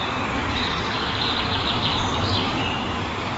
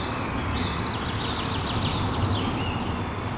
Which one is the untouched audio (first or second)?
second